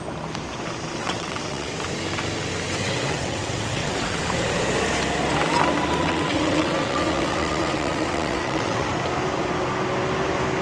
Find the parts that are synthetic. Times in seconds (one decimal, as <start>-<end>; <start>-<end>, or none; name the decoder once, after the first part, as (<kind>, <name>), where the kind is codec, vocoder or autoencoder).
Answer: 1.0-1.7 (vocoder, WaveNeXt); 2.8-4.2; 6.0-8.9